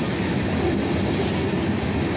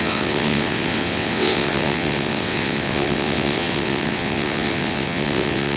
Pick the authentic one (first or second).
first